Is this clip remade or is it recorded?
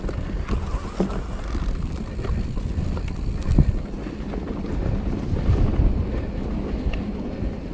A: recorded